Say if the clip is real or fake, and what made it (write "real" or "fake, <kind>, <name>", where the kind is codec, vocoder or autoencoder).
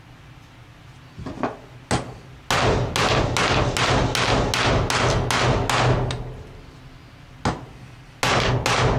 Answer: real